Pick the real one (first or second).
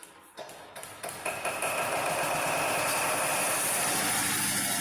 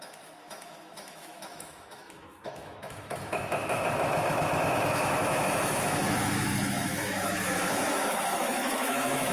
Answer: first